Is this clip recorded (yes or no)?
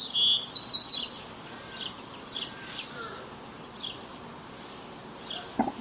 yes